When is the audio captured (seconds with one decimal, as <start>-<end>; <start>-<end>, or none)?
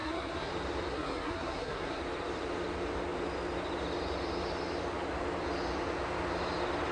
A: 0.5-0.9; 2.0-6.9